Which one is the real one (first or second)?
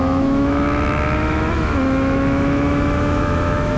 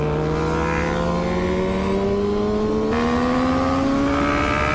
second